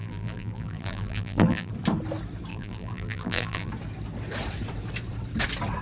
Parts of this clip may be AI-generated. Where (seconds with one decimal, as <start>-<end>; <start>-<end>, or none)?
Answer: 0.0-1.7; 2.5-3.7